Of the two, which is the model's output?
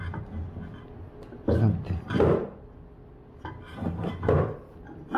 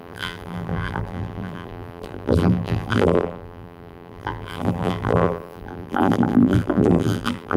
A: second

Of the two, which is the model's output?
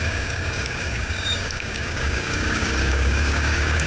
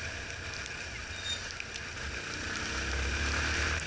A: first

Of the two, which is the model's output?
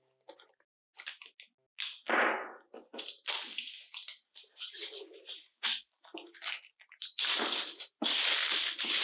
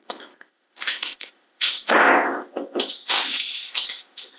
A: second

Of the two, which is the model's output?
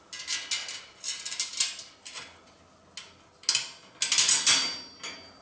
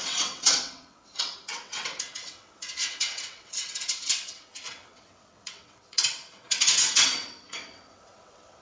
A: second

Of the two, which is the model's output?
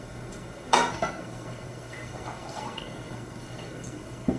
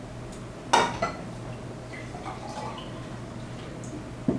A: first